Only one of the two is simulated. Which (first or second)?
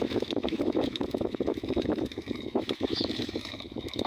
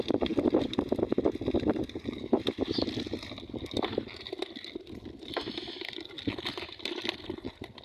first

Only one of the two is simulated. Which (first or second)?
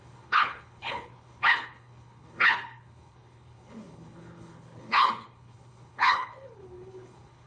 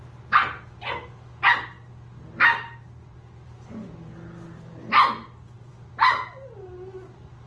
first